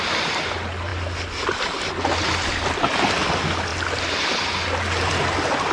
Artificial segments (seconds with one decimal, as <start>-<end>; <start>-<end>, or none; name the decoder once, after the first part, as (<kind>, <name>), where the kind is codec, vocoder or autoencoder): none